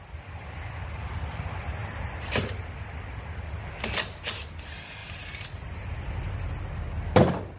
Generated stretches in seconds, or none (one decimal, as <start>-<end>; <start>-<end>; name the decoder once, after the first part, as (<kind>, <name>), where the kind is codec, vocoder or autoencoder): none